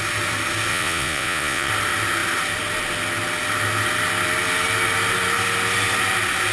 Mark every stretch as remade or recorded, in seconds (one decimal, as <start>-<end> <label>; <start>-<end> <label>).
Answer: 0.0-0.7 recorded; 0.7-1.7 remade; 1.7-6.5 recorded